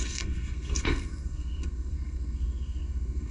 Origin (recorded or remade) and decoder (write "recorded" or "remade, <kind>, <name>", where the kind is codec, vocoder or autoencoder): remade, codec, SNAC